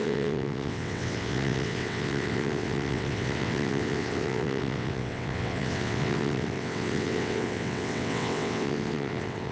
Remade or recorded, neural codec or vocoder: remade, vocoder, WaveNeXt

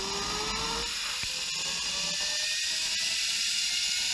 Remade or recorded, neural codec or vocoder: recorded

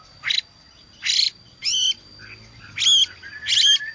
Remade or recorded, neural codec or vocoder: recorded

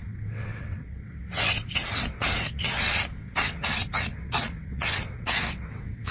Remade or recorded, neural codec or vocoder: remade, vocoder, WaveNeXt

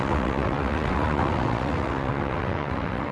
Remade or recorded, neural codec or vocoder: remade, vocoder, WaveNeXt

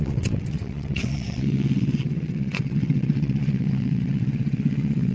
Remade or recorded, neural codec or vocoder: remade, vocoder, WaveNeXt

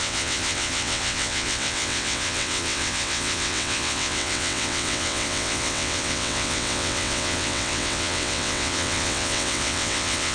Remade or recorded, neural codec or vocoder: remade, vocoder, WaveNeXt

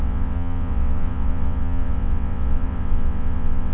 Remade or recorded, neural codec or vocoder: remade, vocoder, WaveNeXt